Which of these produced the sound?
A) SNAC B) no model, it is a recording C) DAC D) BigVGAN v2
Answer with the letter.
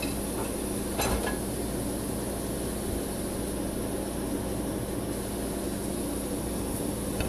B